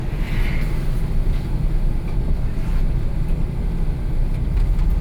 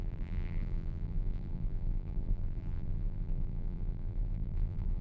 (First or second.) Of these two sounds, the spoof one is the second